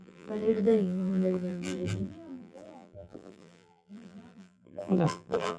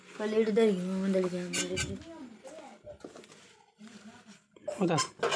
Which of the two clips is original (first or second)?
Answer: second